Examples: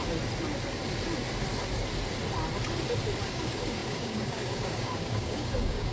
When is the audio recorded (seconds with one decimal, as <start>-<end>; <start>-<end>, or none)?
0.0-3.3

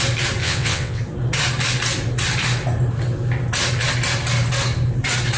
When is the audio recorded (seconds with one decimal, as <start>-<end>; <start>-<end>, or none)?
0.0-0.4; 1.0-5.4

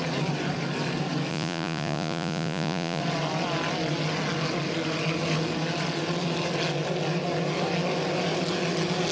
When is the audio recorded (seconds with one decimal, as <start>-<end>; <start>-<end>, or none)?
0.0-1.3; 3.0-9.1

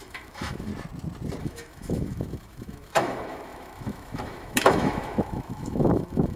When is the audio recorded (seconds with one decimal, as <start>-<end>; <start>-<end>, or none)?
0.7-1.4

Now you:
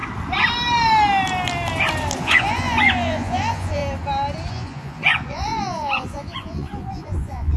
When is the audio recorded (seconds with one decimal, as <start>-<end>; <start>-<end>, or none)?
0.0-2.2; 3.8-4.5

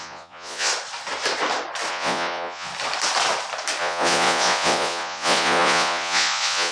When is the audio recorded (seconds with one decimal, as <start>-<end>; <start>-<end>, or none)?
0.7-1.9; 2.7-3.8

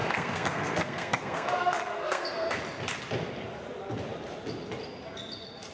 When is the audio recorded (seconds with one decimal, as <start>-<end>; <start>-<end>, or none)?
2.6-5.7